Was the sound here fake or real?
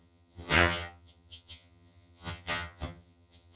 fake